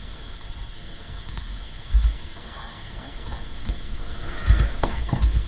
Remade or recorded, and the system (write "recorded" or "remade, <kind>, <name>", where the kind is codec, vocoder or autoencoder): remade, codec, SNAC